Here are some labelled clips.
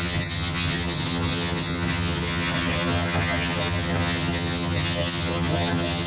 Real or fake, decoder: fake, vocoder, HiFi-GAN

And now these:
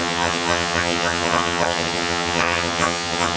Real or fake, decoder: fake, vocoder, HiFi-GAN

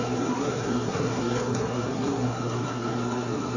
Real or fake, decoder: fake, codec, SNAC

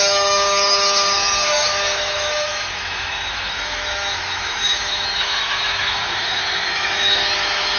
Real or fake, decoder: fake, autoencoder, DAC-VAE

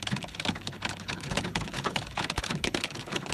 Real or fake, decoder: fake, codec, HILCodec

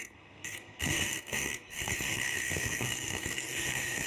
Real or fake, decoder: fake, codec, SNAC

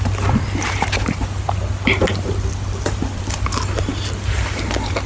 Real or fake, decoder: real